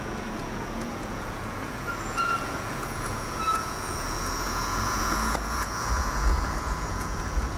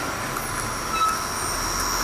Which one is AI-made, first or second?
first